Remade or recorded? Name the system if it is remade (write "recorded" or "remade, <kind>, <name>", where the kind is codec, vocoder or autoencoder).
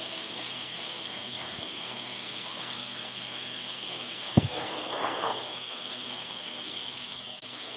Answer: remade, codec, SNAC